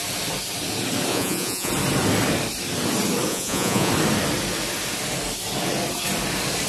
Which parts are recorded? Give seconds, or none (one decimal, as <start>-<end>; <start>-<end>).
0.0-1.1; 1.7-3.3; 3.9-6.7